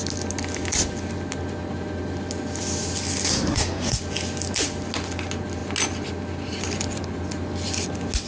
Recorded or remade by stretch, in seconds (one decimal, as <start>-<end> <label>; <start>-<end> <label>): 0.0-3.3 recorded; 3.3-4.0 remade; 4.0-8.3 recorded